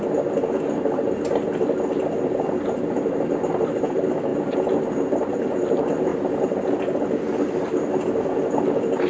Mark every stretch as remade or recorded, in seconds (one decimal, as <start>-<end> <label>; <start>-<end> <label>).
0.0-6.1 recorded; 6.1-7.4 remade; 7.4-9.1 recorded

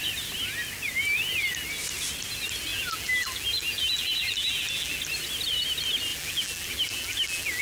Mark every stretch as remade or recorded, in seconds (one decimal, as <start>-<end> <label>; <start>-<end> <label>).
0.0-2.7 recorded; 2.7-5.0 remade; 5.0-6.1 recorded; 6.1-7.6 remade

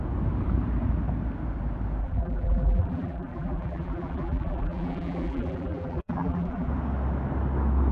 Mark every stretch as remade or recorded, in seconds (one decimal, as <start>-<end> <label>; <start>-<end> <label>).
0.0-2.0 recorded; 2.0-6.7 remade; 6.7-7.9 recorded

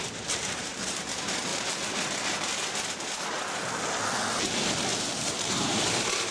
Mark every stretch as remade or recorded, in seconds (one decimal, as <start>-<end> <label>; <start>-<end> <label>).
0.0-1.5 remade; 1.5-5.3 recorded; 5.3-6.3 remade

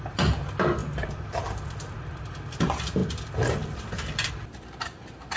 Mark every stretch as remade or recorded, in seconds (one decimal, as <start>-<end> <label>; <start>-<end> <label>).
0.0-5.4 remade

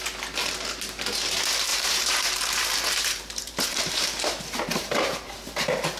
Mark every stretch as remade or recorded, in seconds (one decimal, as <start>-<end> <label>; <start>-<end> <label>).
0.0-1.7 recorded; 1.7-5.3 remade; 5.3-6.0 recorded

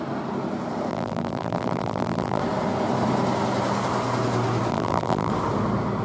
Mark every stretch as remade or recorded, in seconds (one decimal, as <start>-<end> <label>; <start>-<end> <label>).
0.0-0.9 recorded; 0.9-2.4 remade; 2.4-4.7 recorded; 4.7-5.3 remade; 5.3-6.0 recorded